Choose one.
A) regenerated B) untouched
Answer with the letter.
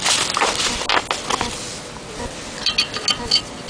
B